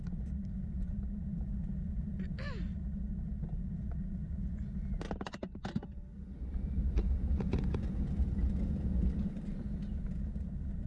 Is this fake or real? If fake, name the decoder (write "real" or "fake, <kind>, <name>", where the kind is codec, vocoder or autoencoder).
real